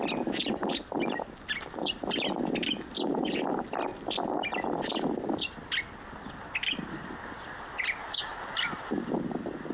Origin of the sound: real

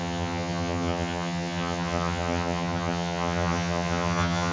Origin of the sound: fake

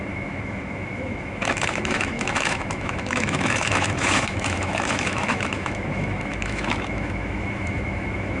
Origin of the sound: fake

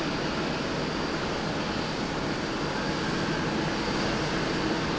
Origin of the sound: real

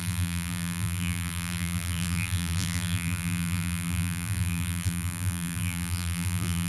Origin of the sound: fake